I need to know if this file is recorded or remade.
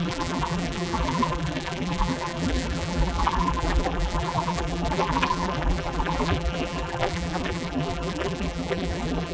remade